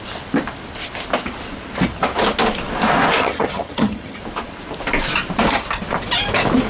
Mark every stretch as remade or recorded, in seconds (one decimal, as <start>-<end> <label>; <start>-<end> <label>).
0.0-3.2 recorded; 3.2-4.2 remade; 4.2-6.7 recorded